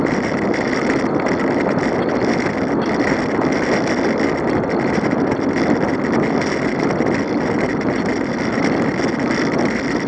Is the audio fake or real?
real